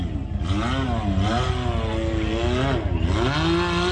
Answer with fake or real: real